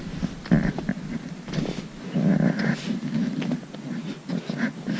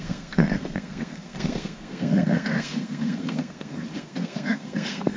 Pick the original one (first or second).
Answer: first